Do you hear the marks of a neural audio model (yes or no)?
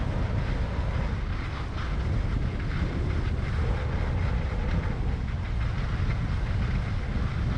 no